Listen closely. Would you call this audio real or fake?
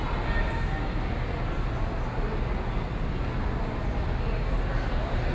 real